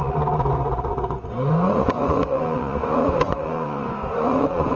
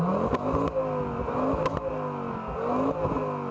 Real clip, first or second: second